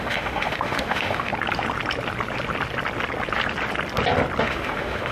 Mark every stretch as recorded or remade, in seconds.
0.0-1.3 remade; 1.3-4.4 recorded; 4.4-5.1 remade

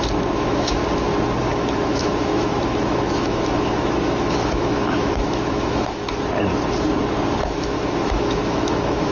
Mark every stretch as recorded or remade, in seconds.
0.0-0.8 remade; 0.8-1.4 recorded; 1.4-6.0 remade; 6.0-7.4 recorded; 7.4-9.1 remade